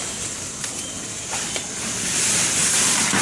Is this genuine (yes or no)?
yes